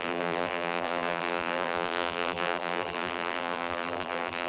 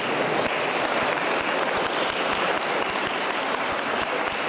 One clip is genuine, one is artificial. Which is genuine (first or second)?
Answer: second